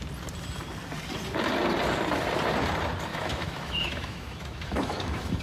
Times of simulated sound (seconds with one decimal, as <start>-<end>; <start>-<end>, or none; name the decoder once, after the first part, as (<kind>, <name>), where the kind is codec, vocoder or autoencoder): 3.1-5.4 (autoencoder, DAC-VAE)